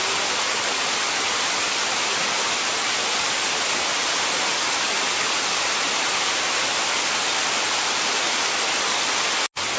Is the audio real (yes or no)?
yes